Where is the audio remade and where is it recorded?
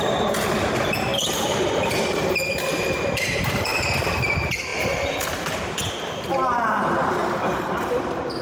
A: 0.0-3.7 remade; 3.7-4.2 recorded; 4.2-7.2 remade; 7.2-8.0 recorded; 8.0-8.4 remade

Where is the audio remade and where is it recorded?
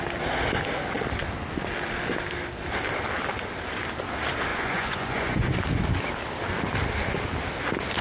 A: 0.0-4.5 recorded; 4.5-5.5 remade; 5.5-8.0 recorded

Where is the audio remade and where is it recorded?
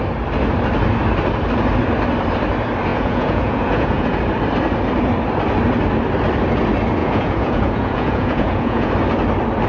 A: 0.0-2.9 recorded; 2.9-4.2 remade; 4.2-7.0 recorded; 7.0-8.9 remade; 8.9-9.7 recorded